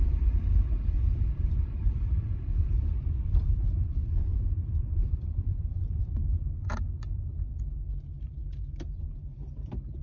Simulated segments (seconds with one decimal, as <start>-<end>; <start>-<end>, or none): 0.0-4.0; 4.7-7.3; 8.2-10.0